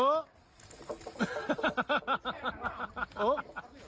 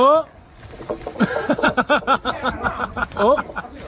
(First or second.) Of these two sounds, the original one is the first